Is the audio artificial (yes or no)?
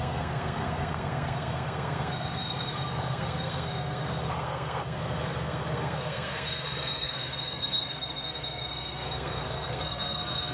yes